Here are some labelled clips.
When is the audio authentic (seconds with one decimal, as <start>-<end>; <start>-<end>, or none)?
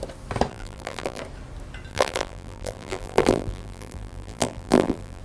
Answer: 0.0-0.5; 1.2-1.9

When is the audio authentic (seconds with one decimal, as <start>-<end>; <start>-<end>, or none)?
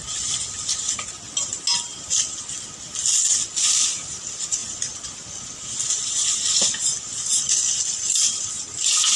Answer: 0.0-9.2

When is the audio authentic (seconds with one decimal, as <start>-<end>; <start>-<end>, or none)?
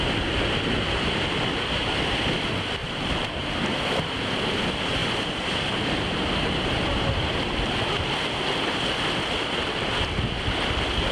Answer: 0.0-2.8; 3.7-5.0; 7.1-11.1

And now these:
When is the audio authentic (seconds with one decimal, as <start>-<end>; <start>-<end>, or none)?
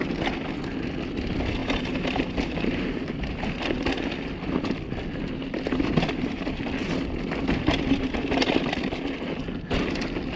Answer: 0.0-1.6; 2.8-10.4